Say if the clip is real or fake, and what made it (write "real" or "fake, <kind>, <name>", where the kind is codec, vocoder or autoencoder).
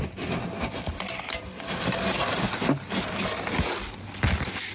real